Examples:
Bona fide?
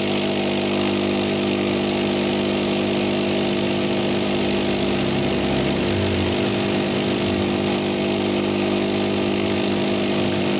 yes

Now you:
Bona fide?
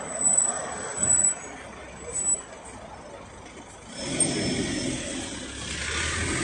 yes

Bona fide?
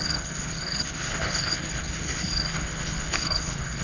no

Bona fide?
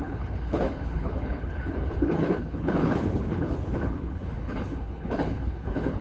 no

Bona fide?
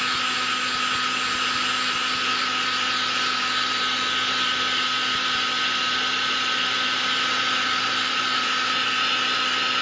yes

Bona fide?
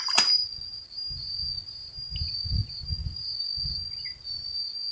yes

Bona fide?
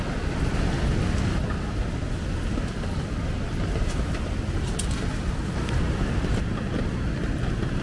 yes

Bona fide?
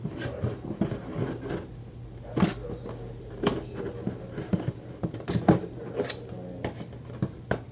yes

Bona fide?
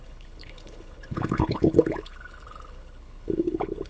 no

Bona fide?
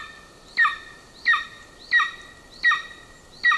yes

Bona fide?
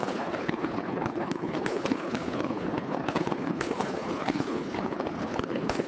no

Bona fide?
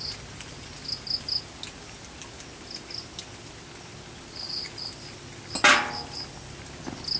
yes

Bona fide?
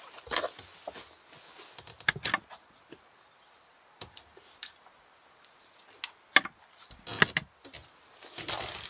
yes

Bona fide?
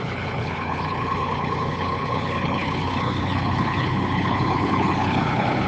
no